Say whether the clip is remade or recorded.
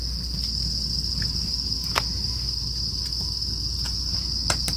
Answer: recorded